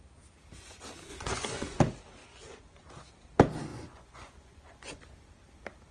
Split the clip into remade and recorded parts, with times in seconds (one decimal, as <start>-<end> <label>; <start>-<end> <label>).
0.0-1.1 recorded; 1.1-1.8 remade; 1.8-2.2 recorded; 2.2-2.8 remade; 2.8-3.7 recorded; 3.7-5.0 remade; 5.0-5.9 recorded